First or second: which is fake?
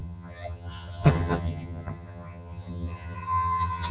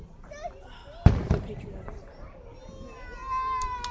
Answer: first